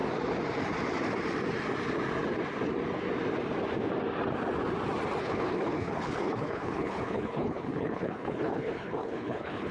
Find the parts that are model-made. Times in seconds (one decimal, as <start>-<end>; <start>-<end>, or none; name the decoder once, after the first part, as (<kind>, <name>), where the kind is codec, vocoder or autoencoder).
5.2-9.7 (codec, HILCodec)